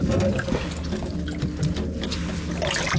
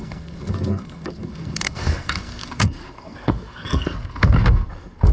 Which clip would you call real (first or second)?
first